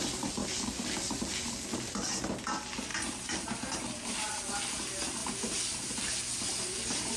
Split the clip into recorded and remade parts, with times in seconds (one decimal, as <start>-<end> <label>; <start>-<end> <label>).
0.0-2.9 recorded; 2.9-4.4 remade; 4.4-5.2 recorded; 5.2-6.1 remade; 6.1-7.2 recorded